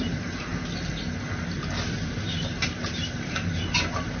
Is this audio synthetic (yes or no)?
yes